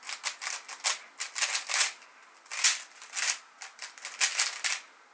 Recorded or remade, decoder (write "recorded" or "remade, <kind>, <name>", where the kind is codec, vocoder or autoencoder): recorded